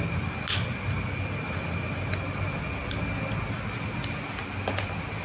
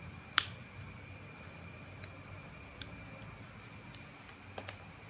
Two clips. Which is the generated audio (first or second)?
second